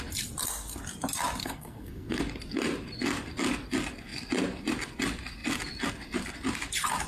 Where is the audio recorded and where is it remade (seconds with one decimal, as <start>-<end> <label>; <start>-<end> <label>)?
0.0-1.4 recorded; 1.4-2.2 remade; 2.2-7.1 recorded